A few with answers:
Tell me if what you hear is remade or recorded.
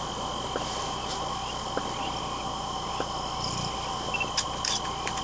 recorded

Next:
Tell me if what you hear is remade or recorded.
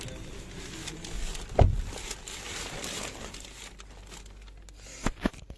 recorded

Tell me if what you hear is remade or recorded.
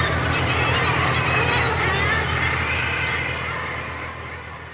recorded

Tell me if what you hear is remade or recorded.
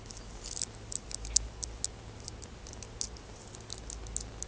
recorded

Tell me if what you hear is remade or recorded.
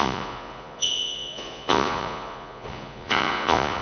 remade